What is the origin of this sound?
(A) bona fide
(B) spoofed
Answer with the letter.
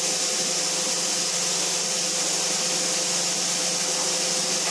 A